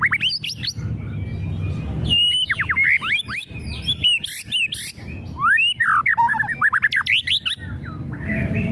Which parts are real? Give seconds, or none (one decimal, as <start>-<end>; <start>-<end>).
0.0-8.7